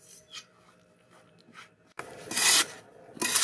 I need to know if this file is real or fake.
real